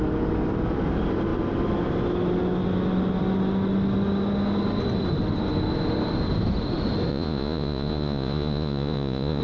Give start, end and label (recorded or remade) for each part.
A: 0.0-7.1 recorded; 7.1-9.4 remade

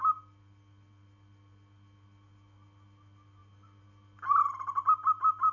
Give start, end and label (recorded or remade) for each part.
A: 0.0-5.5 recorded

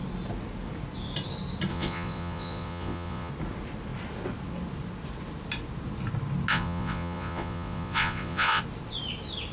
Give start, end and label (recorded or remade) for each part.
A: 0.0-1.7 recorded; 1.7-3.3 remade; 3.3-6.5 recorded; 6.5-8.6 remade; 8.6-9.5 recorded

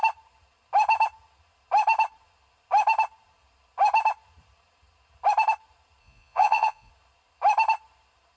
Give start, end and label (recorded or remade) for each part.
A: 0.0-6.0 recorded; 6.0-6.9 remade; 6.9-8.4 recorded